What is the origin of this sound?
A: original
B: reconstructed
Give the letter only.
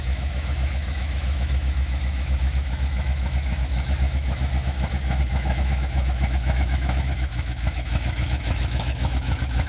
B